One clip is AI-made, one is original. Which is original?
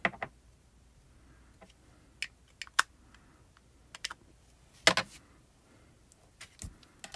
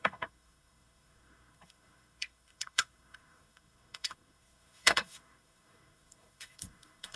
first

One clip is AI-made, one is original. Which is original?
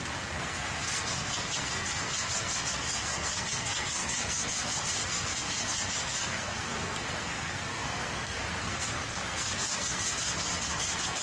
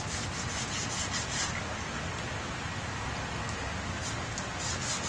second